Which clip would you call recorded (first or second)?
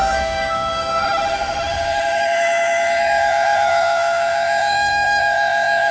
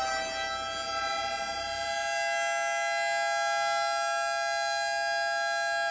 second